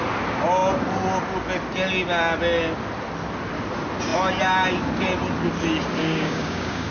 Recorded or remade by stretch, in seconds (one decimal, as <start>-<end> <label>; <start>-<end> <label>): 0.0-6.0 recorded; 6.0-6.9 remade

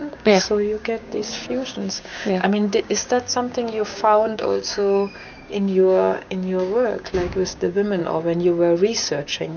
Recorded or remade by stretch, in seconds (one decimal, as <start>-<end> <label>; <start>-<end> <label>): 0.0-8.0 remade; 8.0-9.2 recorded; 9.2-9.6 remade

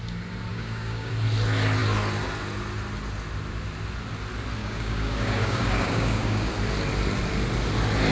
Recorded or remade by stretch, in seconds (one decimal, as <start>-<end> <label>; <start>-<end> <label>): 0.0-0.5 recorded; 0.5-1.1 remade; 1.1-4.6 recorded; 4.6-6.5 remade; 6.5-8.1 recorded

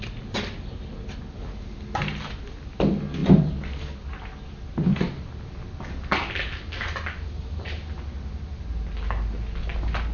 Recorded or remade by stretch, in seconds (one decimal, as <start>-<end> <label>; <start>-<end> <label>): 0.0-10.1 recorded